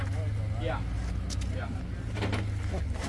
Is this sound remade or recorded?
recorded